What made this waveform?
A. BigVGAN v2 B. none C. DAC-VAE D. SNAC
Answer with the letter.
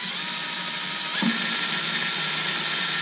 B